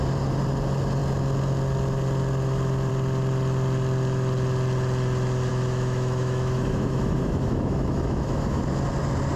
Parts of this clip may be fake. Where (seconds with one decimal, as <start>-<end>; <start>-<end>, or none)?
5.5-8.6